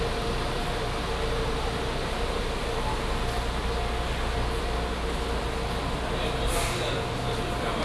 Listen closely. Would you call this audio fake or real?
real